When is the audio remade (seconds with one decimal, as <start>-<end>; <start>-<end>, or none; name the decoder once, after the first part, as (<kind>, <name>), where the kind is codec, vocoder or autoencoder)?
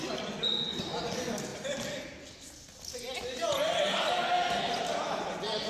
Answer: 1.5-2.2 (vocoder, BigVGAN v2)